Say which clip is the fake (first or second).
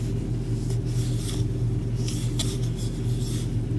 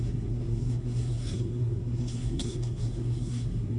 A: second